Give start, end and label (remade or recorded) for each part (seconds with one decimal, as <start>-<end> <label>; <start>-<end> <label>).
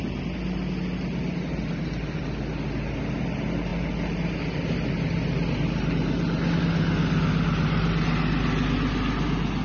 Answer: 0.0-9.6 recorded